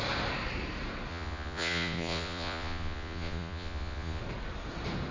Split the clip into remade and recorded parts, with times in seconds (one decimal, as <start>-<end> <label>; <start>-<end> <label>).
0.0-1.1 recorded; 1.1-4.2 remade; 4.2-5.1 recorded